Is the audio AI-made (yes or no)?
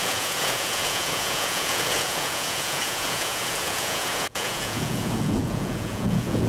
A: yes